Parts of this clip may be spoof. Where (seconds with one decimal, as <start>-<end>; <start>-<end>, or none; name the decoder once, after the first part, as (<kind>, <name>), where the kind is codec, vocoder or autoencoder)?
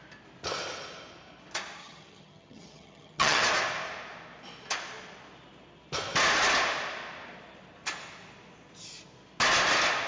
1.8-3.4 (vocoder, HiFi-GAN)